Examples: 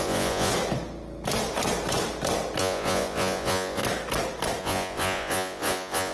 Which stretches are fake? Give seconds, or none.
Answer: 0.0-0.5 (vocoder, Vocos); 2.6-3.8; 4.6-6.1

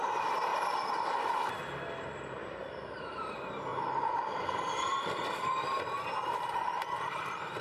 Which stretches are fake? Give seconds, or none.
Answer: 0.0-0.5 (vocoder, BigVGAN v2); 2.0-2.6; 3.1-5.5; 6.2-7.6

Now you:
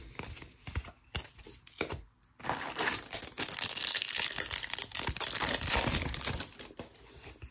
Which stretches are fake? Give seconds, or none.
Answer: none

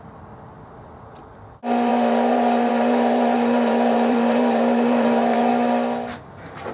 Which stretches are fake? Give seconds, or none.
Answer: 1.9-5.5 (vocoder, BigVGAN v2)

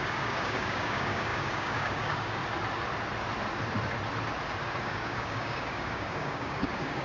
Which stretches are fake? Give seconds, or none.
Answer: 0.0-2.4 (codec, DAC); 4.8-7.0